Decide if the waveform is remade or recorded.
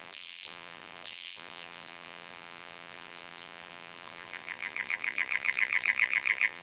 remade